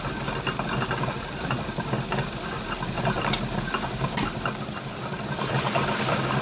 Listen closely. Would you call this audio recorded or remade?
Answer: recorded